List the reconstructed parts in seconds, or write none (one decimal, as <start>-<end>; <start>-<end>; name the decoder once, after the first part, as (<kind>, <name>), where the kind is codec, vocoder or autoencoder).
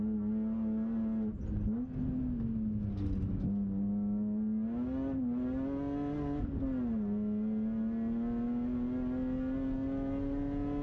none